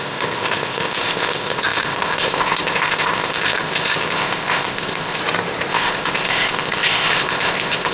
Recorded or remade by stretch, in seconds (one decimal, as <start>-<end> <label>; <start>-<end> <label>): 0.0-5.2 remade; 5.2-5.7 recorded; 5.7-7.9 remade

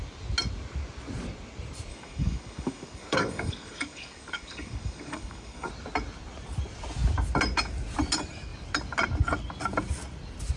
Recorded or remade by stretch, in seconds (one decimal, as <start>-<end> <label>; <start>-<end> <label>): 0.0-1.9 recorded; 1.9-5.7 remade; 5.7-10.6 recorded

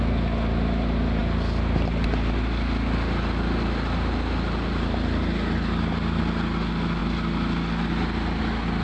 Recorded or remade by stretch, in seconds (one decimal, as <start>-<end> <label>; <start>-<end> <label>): 0.0-8.8 recorded

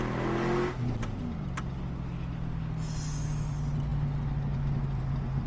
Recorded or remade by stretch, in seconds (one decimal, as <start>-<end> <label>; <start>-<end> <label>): 0.0-5.5 recorded

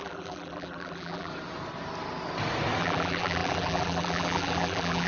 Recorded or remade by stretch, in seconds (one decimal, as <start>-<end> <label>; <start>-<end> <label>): 0.0-1.3 remade; 1.3-2.8 recorded; 2.8-5.1 remade